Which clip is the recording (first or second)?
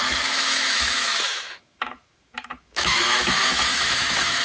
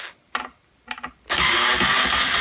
second